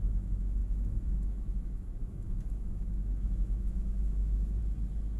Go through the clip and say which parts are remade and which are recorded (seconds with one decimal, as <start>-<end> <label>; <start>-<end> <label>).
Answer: 0.0-4.6 remade; 4.6-5.2 recorded